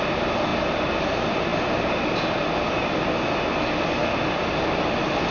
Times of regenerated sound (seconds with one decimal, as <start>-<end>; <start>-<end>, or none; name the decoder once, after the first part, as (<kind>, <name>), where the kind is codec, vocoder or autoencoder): none